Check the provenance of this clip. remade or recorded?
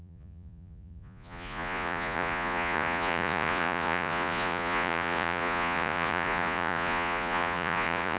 remade